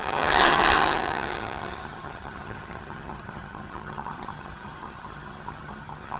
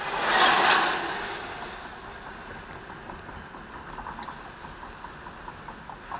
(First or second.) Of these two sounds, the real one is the second